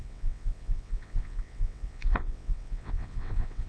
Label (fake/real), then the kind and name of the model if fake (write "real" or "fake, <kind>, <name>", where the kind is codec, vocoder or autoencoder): fake, vocoder, WaveNeXt